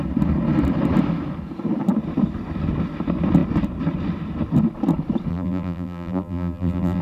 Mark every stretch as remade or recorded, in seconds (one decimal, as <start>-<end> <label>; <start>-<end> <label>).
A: 0.0-5.3 recorded; 5.3-7.0 remade